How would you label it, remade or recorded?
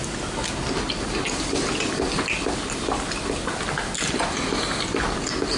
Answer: recorded